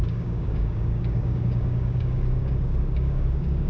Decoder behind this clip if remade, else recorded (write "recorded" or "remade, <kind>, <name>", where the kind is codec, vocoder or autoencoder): remade, codec, DAC